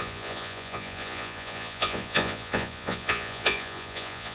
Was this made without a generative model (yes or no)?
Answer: no